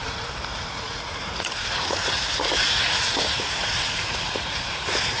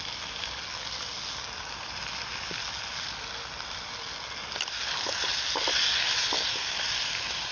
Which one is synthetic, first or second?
first